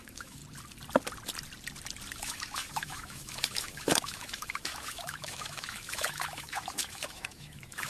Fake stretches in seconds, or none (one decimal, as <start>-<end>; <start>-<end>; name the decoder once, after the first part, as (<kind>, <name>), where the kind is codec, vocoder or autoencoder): 0.0-0.4 (autoencoder, DAC-VAE); 2.2-7.9